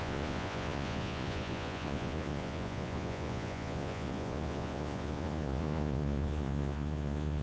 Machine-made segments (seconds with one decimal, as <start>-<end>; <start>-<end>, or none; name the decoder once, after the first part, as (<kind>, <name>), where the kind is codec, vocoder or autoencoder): 0.0-7.4 (vocoder, Vocos)